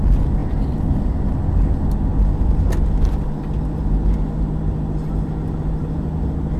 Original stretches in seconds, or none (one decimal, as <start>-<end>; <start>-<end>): 0.0-6.6